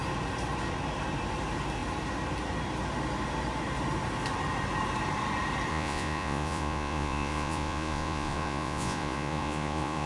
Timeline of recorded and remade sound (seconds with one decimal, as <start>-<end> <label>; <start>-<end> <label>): 0.0-5.7 recorded; 5.7-10.1 remade